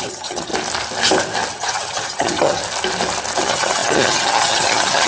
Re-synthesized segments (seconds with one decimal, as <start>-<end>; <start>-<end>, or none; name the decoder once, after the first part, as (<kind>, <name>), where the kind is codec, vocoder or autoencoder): 0.0-0.5 (vocoder, HiFi-GAN); 1.5-2.6; 3.4-5.1